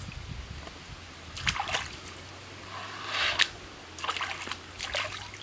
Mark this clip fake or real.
real